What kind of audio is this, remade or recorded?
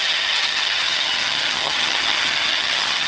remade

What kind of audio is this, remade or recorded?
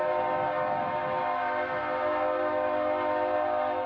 recorded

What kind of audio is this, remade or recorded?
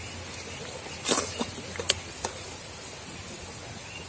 recorded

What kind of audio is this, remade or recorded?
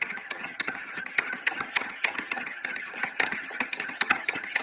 remade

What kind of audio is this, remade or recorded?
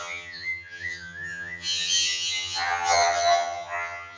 remade